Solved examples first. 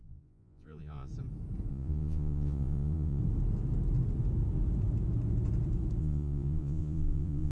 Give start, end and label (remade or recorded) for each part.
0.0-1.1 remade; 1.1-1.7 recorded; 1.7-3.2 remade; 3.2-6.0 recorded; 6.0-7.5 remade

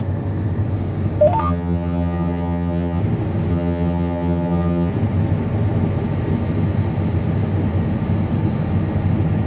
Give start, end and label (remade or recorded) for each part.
0.0-1.4 recorded; 1.4-3.0 remade; 3.0-3.5 recorded; 3.5-4.9 remade; 4.9-9.5 recorded

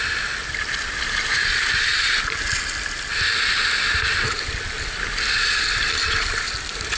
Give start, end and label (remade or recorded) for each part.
0.0-7.0 recorded

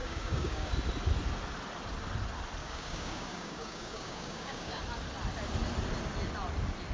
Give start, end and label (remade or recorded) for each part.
0.0-0.7 remade; 0.7-2.6 recorded; 2.6-4.8 remade; 4.8-6.9 recorded

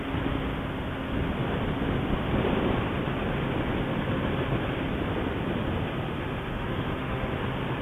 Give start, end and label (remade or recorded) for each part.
0.0-6.5 recorded; 6.5-7.3 remade; 7.3-7.8 recorded

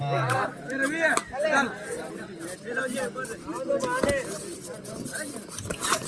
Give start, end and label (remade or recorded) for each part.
0.0-6.1 recorded

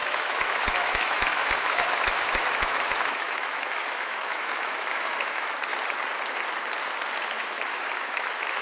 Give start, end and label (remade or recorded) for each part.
0.0-5.7 remade; 5.7-7.3 recorded; 7.3-8.6 remade